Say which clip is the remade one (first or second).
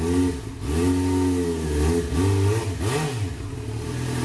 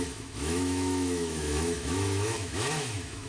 second